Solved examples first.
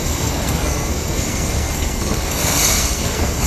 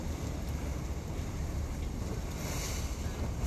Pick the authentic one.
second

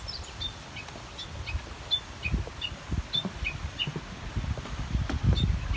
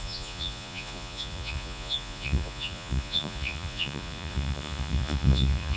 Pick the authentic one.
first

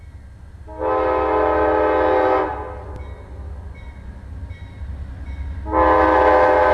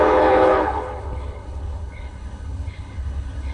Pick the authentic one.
first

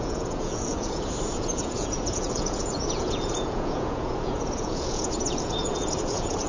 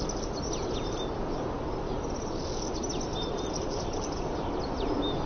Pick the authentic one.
second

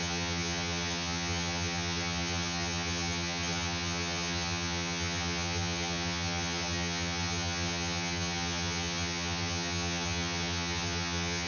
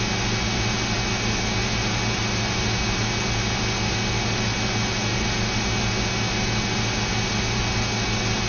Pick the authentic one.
second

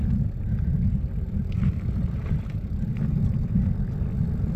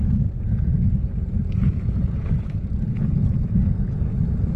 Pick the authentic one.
first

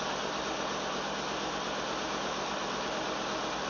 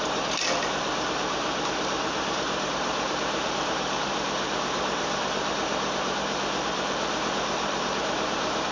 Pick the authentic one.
first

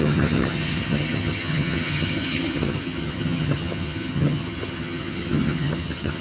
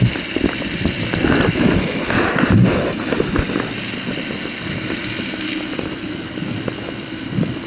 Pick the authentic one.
second